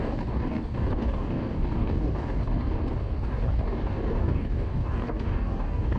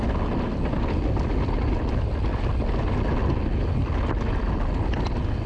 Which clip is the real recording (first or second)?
second